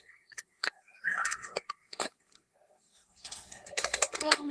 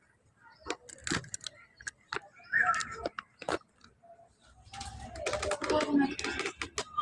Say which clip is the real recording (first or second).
second